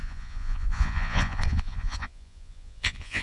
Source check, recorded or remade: remade